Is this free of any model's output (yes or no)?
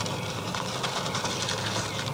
yes